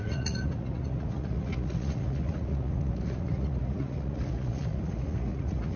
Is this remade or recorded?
remade